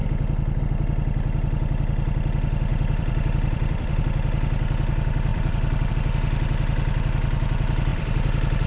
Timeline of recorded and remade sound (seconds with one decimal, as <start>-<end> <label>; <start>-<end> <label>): 0.0-2.7 recorded; 2.7-4.0 remade; 4.0-5.3 recorded; 5.3-5.9 remade; 5.9-7.9 recorded; 7.9-8.7 remade